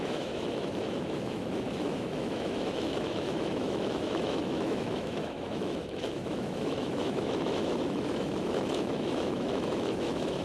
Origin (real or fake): fake